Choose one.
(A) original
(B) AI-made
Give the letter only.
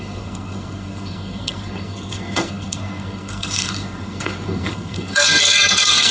B